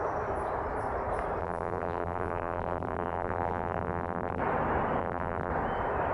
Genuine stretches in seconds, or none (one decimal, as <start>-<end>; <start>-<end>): 0.0-1.4; 4.4-5.0; 5.5-6.1